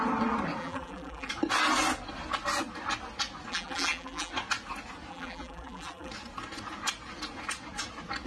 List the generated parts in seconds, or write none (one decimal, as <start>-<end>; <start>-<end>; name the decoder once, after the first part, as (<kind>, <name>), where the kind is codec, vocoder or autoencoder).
0.6-1.3 (vocoder, BigVGAN v2); 3.5-4.3; 5.1-6.1